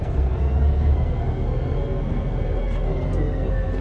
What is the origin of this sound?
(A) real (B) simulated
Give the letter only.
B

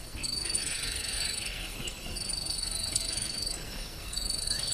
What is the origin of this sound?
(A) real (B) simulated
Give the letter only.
B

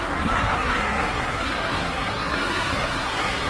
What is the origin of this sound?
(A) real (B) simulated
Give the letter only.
B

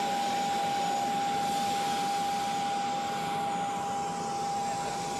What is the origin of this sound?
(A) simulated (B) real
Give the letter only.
B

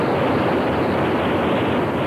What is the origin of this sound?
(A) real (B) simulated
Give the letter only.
A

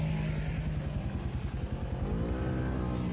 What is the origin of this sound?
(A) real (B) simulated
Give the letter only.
A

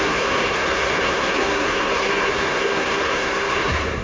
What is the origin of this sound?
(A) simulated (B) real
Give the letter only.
A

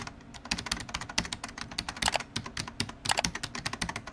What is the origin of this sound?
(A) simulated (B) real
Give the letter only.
B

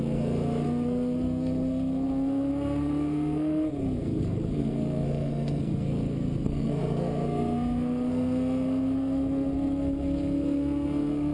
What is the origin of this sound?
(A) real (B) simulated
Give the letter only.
B